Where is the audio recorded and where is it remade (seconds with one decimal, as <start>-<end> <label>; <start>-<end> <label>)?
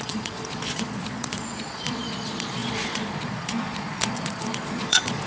0.0-5.3 remade